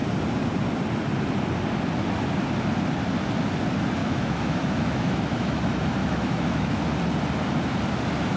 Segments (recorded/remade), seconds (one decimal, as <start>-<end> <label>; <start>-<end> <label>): 0.0-4.0 recorded; 4.0-5.6 remade; 5.6-6.0 recorded; 6.0-6.8 remade; 6.8-8.4 recorded